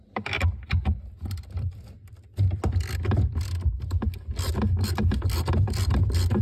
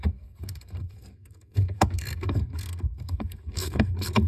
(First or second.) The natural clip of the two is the first